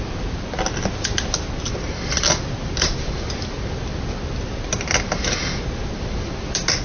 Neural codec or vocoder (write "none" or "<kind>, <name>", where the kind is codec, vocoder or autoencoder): none